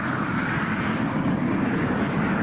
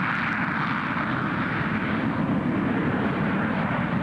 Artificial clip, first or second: first